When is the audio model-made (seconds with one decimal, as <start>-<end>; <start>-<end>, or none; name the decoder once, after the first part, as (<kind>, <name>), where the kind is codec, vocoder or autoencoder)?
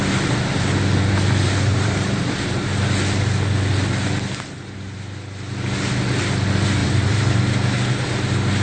1.7-2.7 (vocoder, BigVGAN v2); 6.8-7.4